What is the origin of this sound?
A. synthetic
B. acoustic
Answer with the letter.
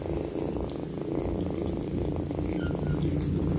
B